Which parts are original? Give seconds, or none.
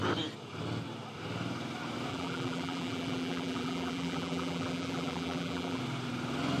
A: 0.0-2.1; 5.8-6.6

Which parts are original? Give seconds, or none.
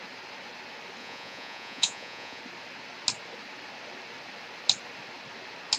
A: 0.0-1.0; 2.4-5.8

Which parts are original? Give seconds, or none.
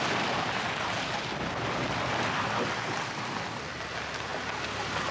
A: 0.0-5.1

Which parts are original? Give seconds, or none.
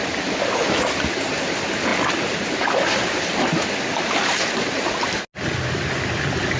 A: 0.0-6.6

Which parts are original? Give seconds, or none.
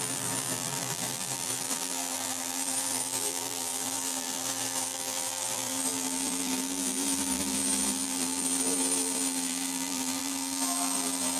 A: none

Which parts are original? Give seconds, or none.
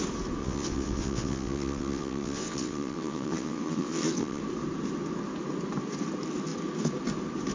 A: 0.0-0.4; 4.4-7.5